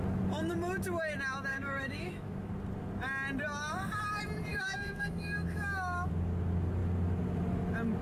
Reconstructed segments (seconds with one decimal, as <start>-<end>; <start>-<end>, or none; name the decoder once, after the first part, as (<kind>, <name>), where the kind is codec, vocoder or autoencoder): 1.5-2.5 (autoencoder, DAC-VAE); 4.5-6.1